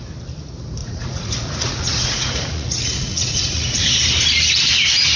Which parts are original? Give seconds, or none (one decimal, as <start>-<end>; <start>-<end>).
0.0-0.8; 3.8-5.2